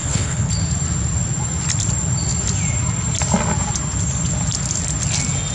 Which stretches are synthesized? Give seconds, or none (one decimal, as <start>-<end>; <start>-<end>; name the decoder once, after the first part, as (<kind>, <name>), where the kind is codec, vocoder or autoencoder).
0.0-0.5 (codec, HILCodec)